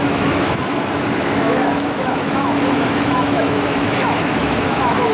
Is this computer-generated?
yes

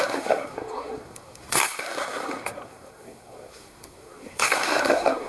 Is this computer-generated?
yes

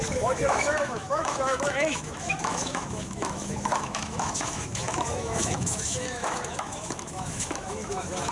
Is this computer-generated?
yes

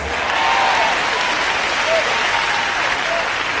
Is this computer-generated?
no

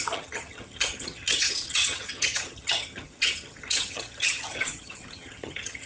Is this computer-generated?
yes